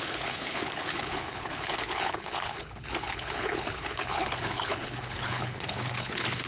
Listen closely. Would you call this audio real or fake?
fake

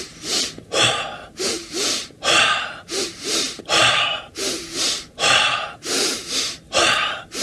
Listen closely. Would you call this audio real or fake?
real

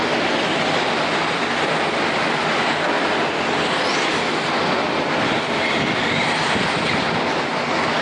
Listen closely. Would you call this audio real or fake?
real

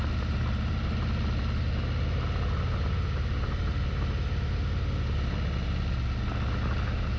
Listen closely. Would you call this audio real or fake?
real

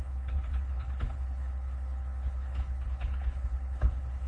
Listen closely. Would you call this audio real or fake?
fake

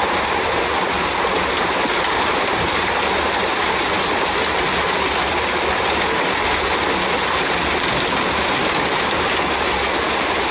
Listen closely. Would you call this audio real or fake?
real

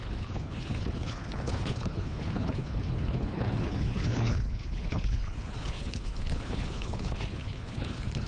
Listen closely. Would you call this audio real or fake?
fake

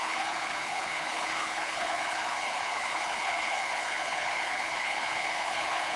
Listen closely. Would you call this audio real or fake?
fake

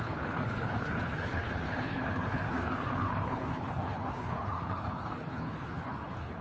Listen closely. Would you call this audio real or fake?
fake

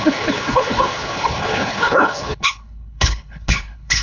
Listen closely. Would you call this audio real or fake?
fake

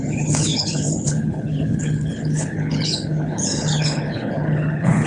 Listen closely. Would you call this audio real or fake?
fake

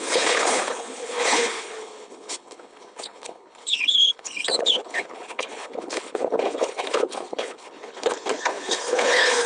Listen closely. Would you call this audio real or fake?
fake